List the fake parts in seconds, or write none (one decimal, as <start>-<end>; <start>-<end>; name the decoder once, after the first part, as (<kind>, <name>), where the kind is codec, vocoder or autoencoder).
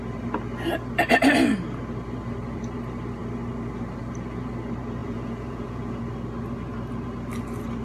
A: 5.0-6.0 (vocoder, Vocos)